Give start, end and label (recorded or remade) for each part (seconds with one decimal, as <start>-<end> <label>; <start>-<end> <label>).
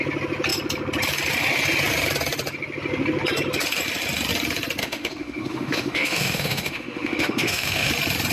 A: 0.0-4.8 recorded; 4.8-7.9 remade; 7.9-8.3 recorded